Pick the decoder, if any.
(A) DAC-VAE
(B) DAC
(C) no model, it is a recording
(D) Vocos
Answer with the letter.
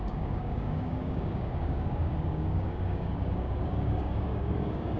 B